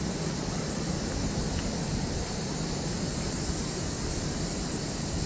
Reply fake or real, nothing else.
real